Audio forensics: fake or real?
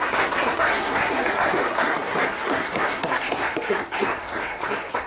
fake